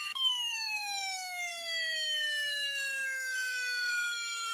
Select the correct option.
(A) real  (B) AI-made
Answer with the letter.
B